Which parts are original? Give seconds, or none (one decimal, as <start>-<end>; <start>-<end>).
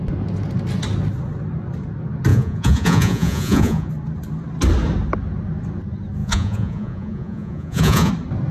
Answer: 0.0-2.3; 3.9-6.2; 8.1-8.5